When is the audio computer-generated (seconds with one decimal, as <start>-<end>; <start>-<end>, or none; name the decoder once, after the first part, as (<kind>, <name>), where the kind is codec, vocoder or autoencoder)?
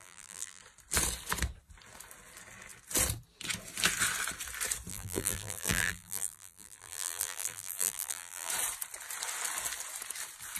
0.0-0.6 (vocoder, BigVGAN v2); 4.9-8.5